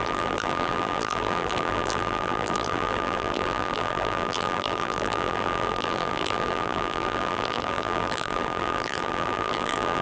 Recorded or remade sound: remade